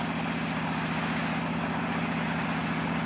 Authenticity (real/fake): real